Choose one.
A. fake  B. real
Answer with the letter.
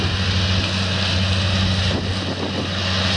B